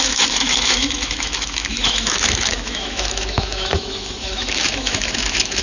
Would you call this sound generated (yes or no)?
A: yes